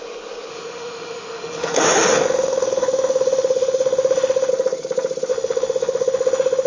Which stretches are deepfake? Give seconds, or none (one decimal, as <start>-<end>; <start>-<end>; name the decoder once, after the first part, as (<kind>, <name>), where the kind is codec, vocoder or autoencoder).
0.5-4.5 (autoencoder, DAC-VAE); 5.3-6.7